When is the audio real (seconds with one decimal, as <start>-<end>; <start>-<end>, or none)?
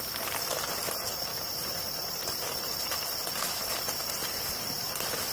0.0-5.3